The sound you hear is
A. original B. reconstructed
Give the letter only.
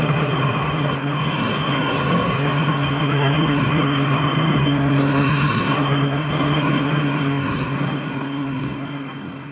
B